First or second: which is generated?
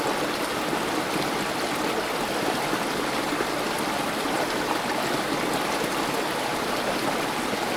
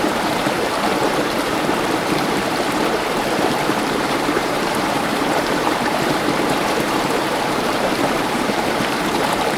second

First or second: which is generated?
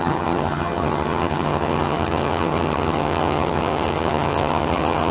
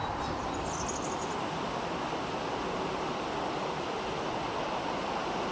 first